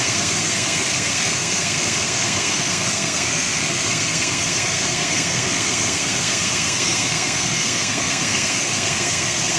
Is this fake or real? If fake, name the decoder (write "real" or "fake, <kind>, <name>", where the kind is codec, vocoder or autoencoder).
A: fake, codec, SNAC